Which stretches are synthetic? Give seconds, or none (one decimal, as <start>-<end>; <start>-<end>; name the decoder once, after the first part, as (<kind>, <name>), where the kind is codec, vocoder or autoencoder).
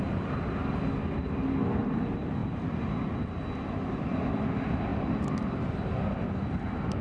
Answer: none